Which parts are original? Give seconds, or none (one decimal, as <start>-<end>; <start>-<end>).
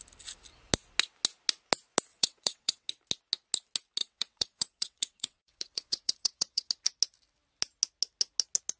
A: 0.0-2.1; 2.9-4.0; 6.7-8.8